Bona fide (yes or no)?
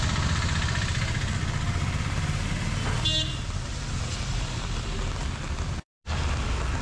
yes